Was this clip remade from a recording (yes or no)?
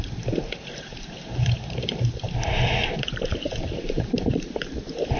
yes